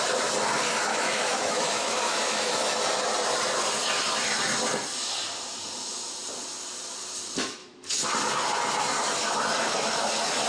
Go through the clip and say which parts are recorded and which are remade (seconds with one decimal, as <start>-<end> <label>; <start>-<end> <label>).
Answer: 0.0-0.9 recorded; 0.9-2.8 remade; 2.8-7.6 recorded; 7.6-8.1 remade; 8.1-10.5 recorded

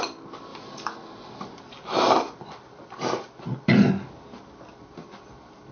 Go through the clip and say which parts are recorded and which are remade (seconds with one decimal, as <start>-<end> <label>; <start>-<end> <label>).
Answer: 0.0-5.7 recorded

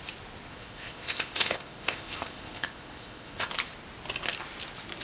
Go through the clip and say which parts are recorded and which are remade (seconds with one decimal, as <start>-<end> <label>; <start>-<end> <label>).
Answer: 0.0-0.5 recorded; 0.5-3.5 remade; 3.5-5.0 recorded

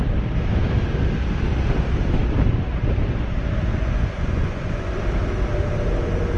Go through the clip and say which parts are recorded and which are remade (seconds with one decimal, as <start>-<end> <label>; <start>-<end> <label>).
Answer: 0.0-3.7 recorded; 3.7-5.0 remade; 5.0-6.4 recorded

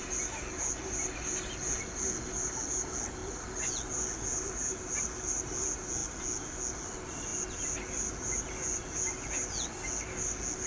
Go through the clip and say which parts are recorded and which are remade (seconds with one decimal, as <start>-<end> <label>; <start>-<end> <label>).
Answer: 0.0-10.7 recorded

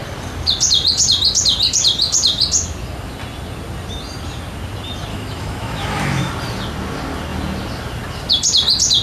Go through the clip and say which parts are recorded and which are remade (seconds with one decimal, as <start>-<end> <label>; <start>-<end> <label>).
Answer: 0.0-5.1 recorded; 5.1-6.3 remade; 6.3-9.0 recorded

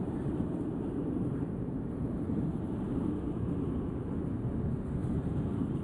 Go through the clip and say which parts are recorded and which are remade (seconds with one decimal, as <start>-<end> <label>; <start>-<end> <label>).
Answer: 0.0-3.5 remade; 3.5-5.0 recorded; 5.0-5.8 remade

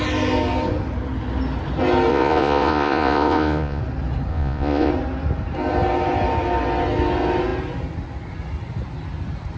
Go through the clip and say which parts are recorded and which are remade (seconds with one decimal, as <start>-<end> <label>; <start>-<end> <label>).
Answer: 0.0-2.1 recorded; 2.1-3.8 remade; 3.8-4.3 recorded; 4.3-4.9 remade; 4.9-9.6 recorded